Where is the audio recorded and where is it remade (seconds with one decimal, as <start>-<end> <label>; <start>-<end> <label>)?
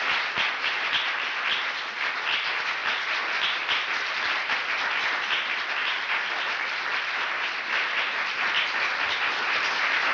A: 0.0-10.1 recorded